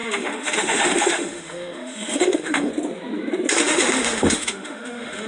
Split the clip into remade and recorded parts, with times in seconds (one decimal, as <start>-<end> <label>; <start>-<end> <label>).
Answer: 0.0-2.7 remade; 2.7-3.5 recorded; 3.5-5.3 remade